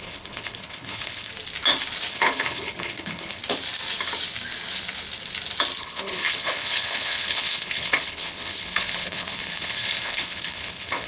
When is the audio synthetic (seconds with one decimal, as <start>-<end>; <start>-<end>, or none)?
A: 0.0-1.3; 2.1-3.4; 5.8-11.1